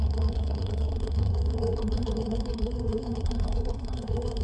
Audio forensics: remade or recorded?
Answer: remade